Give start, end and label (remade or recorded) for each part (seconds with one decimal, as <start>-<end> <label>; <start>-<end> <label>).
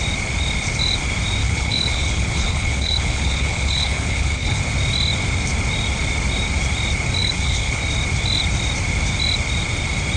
0.0-1.4 recorded; 1.4-4.6 remade; 4.6-7.2 recorded; 7.2-7.8 remade; 7.8-10.2 recorded